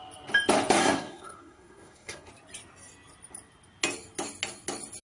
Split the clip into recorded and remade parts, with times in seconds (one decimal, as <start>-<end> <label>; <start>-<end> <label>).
0.0-0.8 recorded; 0.8-2.3 remade; 2.3-5.1 recorded